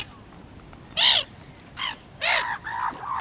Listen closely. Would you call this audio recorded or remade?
recorded